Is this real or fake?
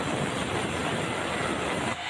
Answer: real